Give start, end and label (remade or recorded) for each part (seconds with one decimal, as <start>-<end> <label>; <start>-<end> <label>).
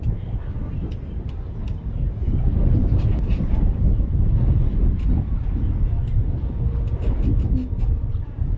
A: 0.0-8.6 recorded